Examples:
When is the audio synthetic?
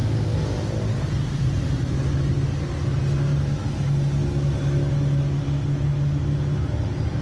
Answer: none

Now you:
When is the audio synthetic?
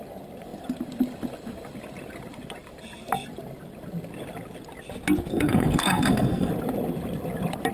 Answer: 5.3-6.5 (codec, SNAC)